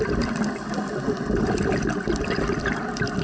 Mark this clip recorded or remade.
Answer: recorded